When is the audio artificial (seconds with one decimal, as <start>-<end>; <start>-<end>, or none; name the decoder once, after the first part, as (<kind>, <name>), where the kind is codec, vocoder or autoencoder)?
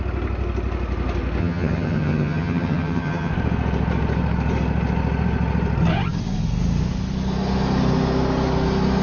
1.4-3.3 (vocoder, HiFi-GAN)